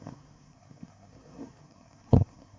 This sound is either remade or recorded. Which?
remade